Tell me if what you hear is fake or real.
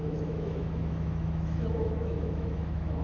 fake